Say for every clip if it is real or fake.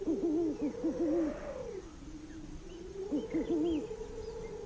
real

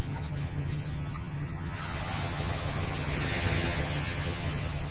fake